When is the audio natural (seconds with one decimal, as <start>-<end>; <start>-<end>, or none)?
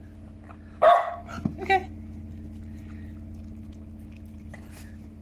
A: 0.0-5.2